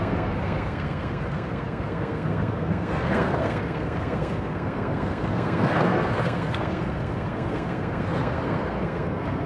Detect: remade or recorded remade